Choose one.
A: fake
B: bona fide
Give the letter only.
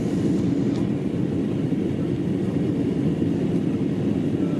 B